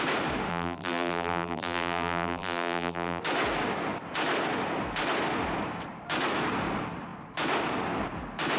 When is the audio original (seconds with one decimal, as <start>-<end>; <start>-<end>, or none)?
0.0-0.5; 3.2-8.6